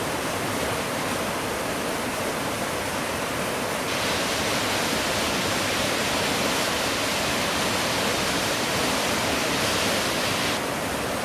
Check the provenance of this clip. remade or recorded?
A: recorded